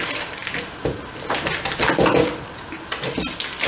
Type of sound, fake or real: real